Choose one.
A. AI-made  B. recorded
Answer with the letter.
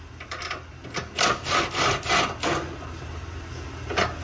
B